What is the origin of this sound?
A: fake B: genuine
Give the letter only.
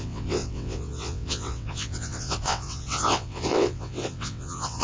A